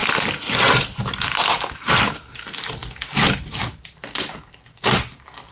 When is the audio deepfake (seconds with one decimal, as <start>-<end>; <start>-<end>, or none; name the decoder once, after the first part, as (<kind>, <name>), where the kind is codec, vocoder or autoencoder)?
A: none